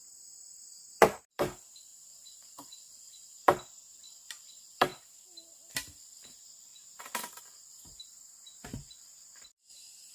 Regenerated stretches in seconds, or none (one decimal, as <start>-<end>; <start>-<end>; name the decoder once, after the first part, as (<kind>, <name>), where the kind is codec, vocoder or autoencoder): 0.0-4.9 (vocoder, BigVGAN v2); 5.7-6.7; 7.4-10.1